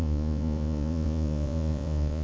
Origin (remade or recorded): remade